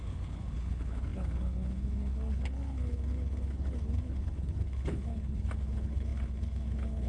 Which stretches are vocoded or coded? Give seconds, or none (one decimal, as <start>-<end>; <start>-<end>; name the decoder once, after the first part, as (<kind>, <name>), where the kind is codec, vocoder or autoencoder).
0.0-7.1 (codec, HILCodec)